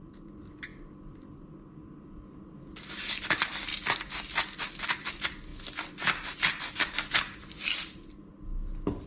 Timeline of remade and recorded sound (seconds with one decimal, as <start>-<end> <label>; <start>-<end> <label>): 0.0-9.1 recorded